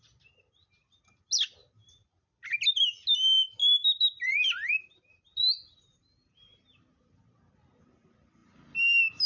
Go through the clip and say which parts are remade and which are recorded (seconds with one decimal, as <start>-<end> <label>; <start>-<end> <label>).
0.0-1.8 recorded; 1.8-2.9 remade; 2.9-3.6 recorded; 3.6-7.5 remade; 7.5-8.4 recorded; 8.4-9.3 remade